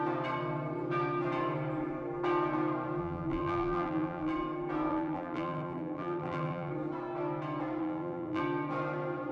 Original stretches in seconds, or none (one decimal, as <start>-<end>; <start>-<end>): 0.0-3.0; 4.3-4.9; 6.7-7.8; 8.4-9.3